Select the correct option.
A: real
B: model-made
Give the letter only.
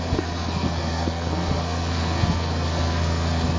B